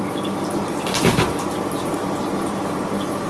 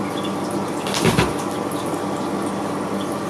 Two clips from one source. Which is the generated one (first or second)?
first